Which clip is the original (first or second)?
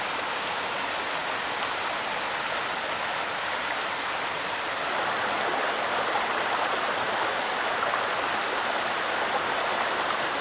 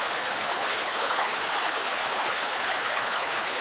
first